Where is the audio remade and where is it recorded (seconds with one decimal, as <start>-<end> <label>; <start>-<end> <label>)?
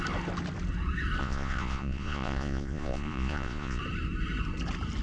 0.0-1.2 recorded; 1.2-3.8 remade; 3.8-5.0 recorded